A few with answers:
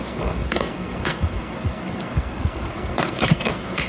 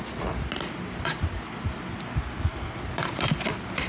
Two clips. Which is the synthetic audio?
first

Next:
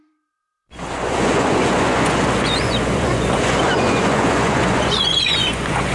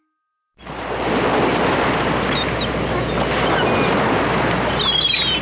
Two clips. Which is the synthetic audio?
first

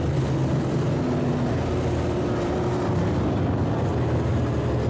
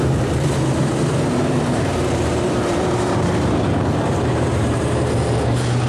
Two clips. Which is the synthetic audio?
second